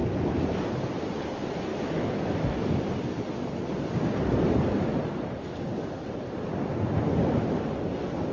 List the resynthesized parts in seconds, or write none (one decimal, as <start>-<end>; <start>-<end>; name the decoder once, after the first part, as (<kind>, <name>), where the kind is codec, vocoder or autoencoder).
1.7-2.6 (autoencoder, DAC-VAE)